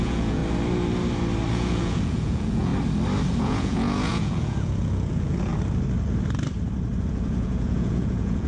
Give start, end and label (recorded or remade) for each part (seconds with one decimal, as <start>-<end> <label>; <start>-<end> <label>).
0.0-0.4 remade; 0.4-1.5 recorded; 1.5-2.7 remade; 2.7-3.4 recorded; 3.4-5.5 remade; 5.5-7.0 recorded; 7.0-8.5 remade